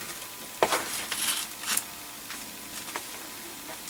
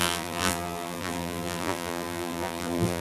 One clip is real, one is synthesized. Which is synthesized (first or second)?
second